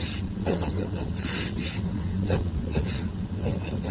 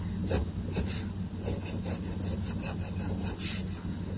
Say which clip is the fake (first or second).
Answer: first